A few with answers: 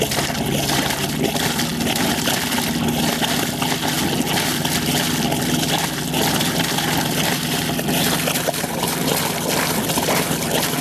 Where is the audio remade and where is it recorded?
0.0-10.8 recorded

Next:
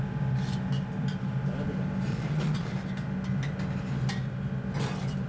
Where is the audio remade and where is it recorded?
0.0-2.1 recorded; 2.1-2.7 remade; 2.7-5.3 recorded